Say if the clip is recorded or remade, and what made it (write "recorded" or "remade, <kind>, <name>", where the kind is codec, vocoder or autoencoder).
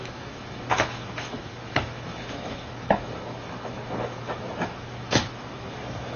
remade, autoencoder, DAC-VAE